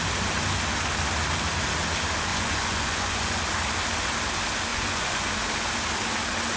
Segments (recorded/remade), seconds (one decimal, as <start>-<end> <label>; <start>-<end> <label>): 0.0-2.3 recorded; 2.3-3.4 remade; 3.4-4.7 recorded; 4.7-5.3 remade; 5.3-6.6 recorded